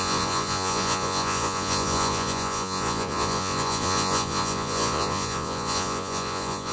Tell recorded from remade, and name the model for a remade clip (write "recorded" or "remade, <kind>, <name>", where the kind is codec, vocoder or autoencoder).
remade, vocoder, Vocos